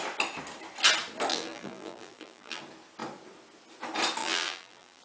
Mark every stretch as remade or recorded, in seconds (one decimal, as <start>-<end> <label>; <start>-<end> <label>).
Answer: 0.0-1.3 recorded; 1.3-2.6 remade; 2.6-4.2 recorded; 4.2-5.0 remade